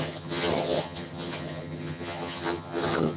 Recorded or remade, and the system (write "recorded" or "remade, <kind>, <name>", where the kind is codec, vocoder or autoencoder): remade, vocoder, HiFi-GAN